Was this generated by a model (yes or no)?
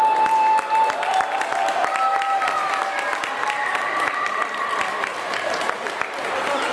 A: no